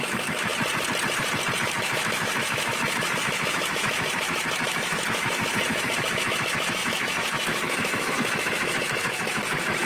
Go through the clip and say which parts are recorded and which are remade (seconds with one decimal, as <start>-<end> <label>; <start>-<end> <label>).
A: 0.0-0.5 remade; 0.5-1.6 recorded; 1.6-9.9 remade